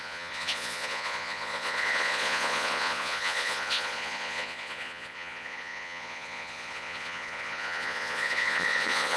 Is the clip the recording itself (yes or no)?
no